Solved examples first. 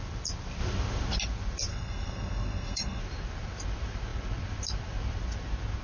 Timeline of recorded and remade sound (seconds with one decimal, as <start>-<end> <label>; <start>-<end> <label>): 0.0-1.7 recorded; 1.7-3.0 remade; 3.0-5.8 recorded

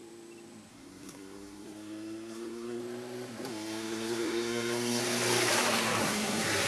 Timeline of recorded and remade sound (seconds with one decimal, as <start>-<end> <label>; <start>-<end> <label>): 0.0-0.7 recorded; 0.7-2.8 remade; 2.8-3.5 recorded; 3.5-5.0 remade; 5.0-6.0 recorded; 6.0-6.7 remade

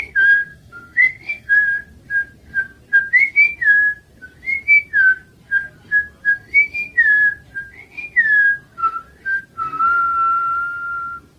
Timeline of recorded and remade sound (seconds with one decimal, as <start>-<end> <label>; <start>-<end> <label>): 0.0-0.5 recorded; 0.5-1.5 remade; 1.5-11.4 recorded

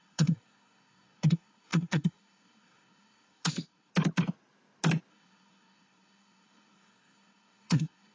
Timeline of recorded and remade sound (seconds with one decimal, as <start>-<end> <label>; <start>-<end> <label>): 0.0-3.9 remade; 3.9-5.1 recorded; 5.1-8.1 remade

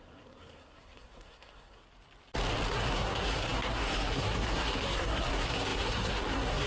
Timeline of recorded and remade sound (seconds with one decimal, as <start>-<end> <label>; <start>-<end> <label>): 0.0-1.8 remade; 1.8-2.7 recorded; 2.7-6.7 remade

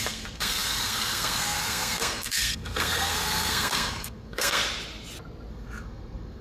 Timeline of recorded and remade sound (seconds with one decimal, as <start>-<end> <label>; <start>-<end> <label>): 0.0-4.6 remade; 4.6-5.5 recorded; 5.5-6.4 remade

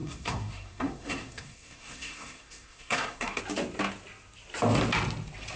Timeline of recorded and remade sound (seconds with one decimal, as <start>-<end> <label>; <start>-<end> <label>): 0.0-3.4 remade; 3.4-5.6 recorded